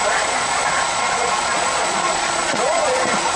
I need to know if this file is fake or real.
fake